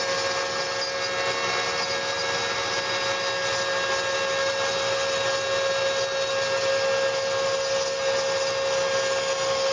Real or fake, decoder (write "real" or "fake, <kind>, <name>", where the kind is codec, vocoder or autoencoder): real